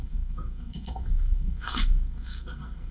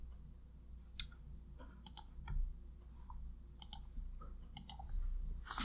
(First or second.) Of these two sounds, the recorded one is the second